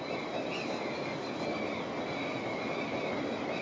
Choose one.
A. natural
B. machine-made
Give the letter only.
A